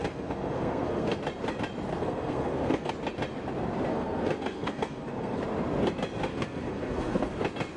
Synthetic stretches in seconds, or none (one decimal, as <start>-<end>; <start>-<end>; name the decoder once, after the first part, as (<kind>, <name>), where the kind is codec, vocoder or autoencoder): 0.0-1.2 (codec, SNAC); 1.9-2.9; 3.9-5.4; 6.3-7.3